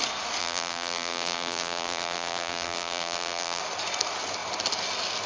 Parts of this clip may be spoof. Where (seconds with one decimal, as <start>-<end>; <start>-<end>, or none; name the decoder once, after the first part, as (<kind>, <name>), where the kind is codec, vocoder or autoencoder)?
0.4-3.6 (vocoder, BigVGAN v2)